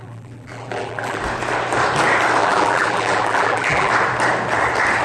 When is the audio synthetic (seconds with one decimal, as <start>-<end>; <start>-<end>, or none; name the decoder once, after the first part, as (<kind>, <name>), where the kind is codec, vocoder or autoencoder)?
0.0-1.2 (vocoder, BigVGAN v2); 2.4-3.9